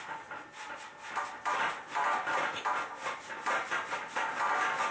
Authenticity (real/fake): real